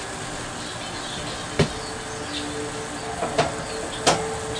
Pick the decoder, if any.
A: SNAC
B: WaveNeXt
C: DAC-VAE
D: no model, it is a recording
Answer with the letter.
D